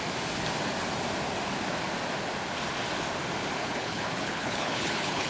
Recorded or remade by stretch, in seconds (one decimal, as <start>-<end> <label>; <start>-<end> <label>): 0.0-3.6 recorded; 3.6-5.3 remade

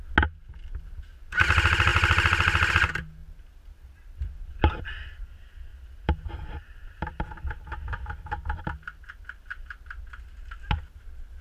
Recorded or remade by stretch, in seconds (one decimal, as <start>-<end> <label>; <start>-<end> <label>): 0.0-3.2 recorded; 3.2-4.5 remade; 4.5-5.7 recorded; 5.7-7.4 remade; 7.4-11.4 recorded

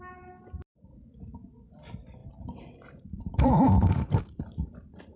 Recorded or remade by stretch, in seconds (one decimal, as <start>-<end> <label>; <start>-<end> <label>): 0.0-2.2 recorded; 2.2-4.2 remade; 4.2-5.2 recorded

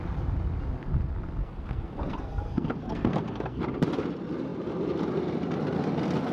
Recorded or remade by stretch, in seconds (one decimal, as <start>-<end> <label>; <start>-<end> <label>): 0.0-1.4 recorded; 1.4-3.6 remade; 3.6-6.3 recorded

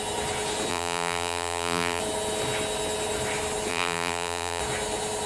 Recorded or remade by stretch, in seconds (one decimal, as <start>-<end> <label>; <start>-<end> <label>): 0.0-0.7 recorded; 0.7-2.0 remade; 2.0-3.7 recorded; 3.7-4.6 remade; 4.6-5.3 recorded

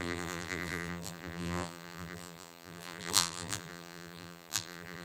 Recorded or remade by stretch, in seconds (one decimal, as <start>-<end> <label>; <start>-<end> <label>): 0.0-5.0 remade

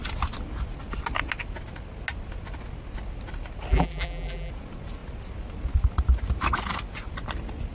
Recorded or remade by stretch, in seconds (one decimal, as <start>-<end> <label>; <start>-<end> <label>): 0.0-3.7 recorded; 3.7-4.5 remade; 4.5-7.7 recorded